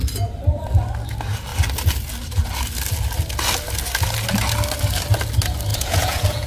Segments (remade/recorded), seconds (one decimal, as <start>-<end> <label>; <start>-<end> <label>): 0.0-5.7 recorded; 5.7-6.5 remade